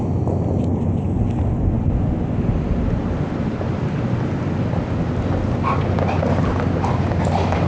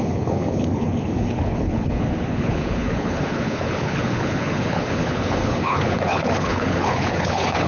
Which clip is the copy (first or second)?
second